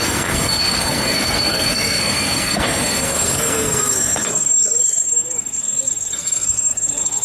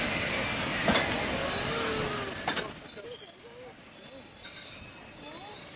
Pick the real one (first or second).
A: second